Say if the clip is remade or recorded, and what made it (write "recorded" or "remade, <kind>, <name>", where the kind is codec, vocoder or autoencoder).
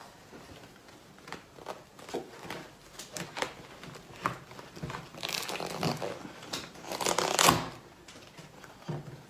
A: recorded